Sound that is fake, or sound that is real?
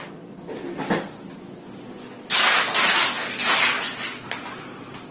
real